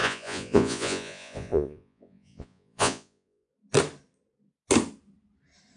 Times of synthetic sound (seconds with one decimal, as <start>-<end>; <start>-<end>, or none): 0.0-3.5